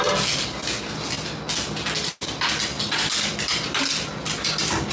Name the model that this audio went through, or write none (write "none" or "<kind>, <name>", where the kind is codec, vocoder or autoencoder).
none